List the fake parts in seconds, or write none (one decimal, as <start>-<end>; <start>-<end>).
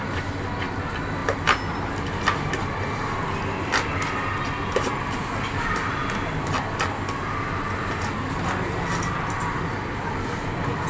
none